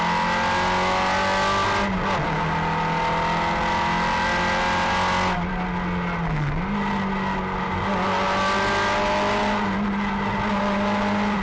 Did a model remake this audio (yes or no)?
no